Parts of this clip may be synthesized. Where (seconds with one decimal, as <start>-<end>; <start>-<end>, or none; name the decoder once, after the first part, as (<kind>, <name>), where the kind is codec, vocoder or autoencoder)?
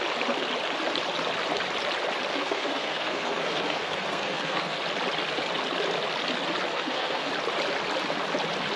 2.3-4.8 (codec, SNAC); 6.7-7.3